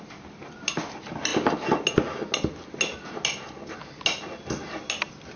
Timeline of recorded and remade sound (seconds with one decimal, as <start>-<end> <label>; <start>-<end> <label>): 0.0-5.4 recorded